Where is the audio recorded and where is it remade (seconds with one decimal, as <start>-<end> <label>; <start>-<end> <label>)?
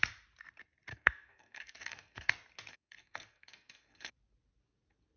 0.0-0.9 recorded; 0.9-2.3 remade; 2.3-2.7 recorded; 2.7-4.1 remade; 4.1-5.2 recorded